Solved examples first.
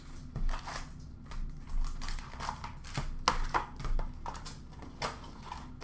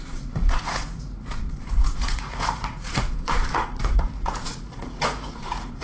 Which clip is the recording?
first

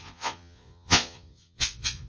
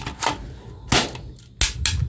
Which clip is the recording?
second